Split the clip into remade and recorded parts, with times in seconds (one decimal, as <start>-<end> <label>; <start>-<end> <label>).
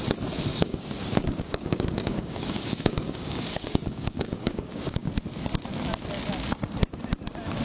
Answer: 0.0-0.5 recorded; 0.5-5.1 remade; 5.1-7.6 recorded